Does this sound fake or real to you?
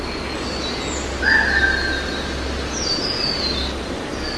real